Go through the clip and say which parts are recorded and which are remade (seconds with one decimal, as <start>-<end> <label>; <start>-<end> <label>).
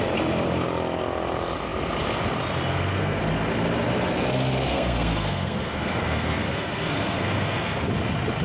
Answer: 0.0-2.7 recorded; 2.7-3.2 remade; 3.2-4.7 recorded; 4.7-7.9 remade; 7.9-8.4 recorded